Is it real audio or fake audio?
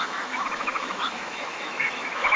fake